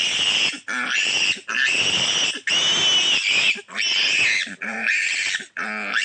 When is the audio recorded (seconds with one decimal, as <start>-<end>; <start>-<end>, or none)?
0.0-6.0